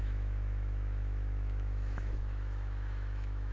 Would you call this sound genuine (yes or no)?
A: no